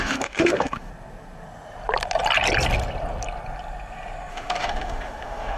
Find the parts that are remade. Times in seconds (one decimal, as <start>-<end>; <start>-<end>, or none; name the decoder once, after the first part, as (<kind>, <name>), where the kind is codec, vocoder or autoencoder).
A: 0.0-0.9 (autoencoder, DAC-VAE); 4.3-5.6

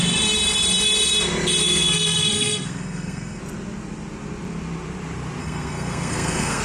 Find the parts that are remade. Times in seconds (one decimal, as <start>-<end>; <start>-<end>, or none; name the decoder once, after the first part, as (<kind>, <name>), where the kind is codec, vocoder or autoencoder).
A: 1.6-3.4 (codec, SNAC); 5.4-6.6

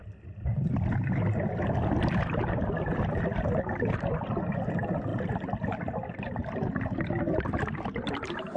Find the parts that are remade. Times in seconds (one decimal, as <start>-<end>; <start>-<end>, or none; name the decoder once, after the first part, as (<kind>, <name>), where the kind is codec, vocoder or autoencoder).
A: none

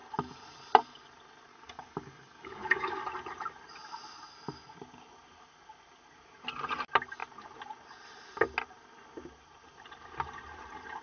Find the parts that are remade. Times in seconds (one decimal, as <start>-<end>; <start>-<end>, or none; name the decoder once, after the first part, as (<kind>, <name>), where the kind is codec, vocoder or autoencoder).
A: 1.5-3.0 (codec, DAC)